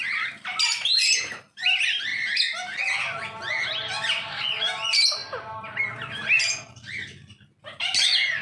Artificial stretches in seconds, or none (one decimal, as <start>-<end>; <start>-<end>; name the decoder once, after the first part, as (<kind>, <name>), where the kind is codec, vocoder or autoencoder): none